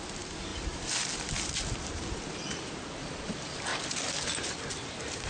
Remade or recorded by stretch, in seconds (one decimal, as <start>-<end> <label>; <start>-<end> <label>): 0.0-5.3 recorded